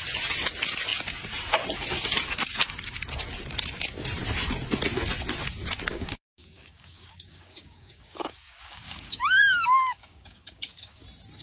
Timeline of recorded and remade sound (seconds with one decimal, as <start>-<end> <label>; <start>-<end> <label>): 0.0-5.9 recorded; 5.9-11.0 remade; 11.0-11.4 recorded